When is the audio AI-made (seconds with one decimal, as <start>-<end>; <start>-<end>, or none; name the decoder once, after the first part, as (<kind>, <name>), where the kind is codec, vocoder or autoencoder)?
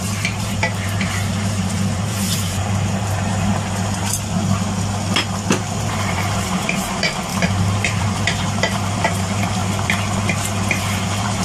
0.0-3.5 (vocoder, BigVGAN v2); 5.6-9.6; 10.7-11.4